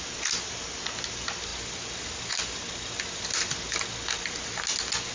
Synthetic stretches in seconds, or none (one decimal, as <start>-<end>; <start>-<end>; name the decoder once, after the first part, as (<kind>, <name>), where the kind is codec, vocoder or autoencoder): none

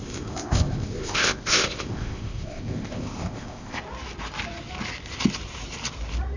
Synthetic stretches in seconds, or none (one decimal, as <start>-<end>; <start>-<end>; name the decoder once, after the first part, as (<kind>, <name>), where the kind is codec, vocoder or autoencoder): 0.0-3.8 (codec, ZipCodec)

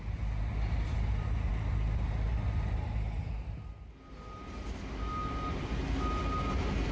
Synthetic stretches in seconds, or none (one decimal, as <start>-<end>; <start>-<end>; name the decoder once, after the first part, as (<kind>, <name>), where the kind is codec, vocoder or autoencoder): none